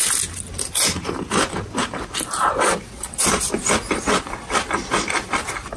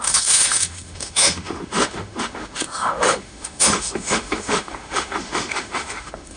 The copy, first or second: second